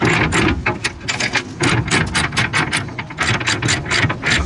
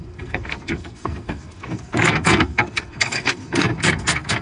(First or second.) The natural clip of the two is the first